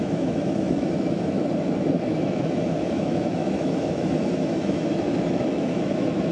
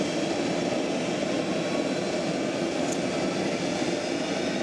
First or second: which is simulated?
first